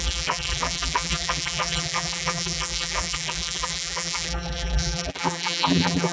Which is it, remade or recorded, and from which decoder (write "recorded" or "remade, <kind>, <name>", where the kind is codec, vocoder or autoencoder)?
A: remade, vocoder, BigVGAN v2